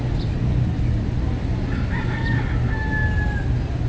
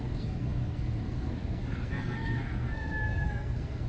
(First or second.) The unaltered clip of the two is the first